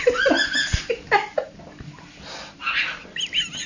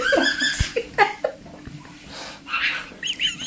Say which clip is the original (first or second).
first